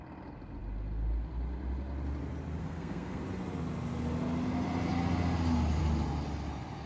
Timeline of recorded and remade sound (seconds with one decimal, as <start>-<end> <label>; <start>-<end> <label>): 0.0-2.6 recorded; 2.6-3.2 remade; 3.2-6.9 recorded